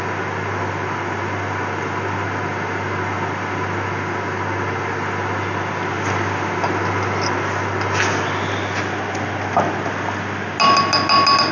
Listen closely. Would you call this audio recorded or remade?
recorded